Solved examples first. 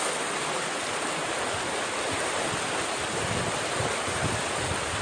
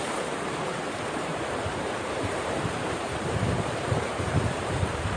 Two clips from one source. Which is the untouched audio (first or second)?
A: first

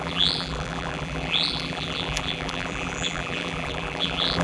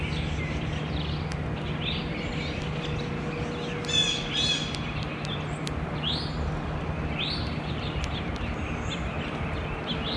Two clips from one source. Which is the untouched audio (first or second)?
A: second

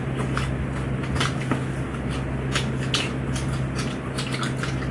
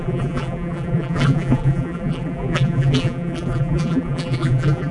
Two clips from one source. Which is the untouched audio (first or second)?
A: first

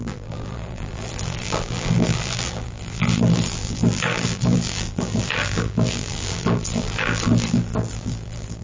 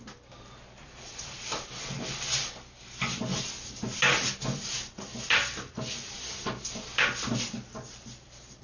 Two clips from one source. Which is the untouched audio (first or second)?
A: second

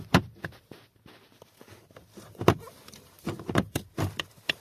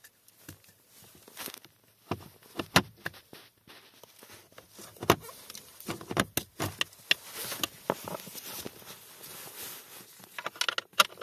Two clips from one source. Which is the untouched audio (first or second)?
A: second